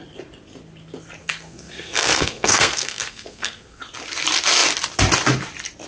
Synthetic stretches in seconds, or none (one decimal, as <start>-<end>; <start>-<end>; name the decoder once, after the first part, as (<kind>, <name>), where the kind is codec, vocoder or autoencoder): 1.2-3.8 (codec, SNAC)